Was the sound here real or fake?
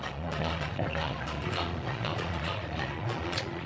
fake